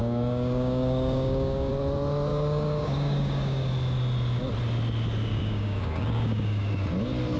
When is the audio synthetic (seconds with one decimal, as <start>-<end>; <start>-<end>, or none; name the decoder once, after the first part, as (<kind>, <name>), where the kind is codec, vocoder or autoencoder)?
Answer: 0.0-1.7 (codec, DAC); 2.3-3.7; 5.3-6.7